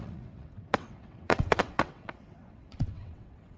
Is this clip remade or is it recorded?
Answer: remade